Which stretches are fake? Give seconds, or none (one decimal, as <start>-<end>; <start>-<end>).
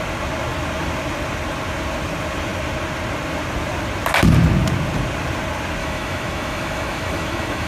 5.8-7.7